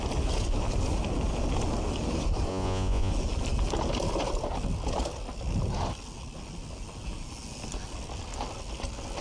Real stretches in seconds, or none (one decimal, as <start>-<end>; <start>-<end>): 0.0-2.5; 3.1-9.2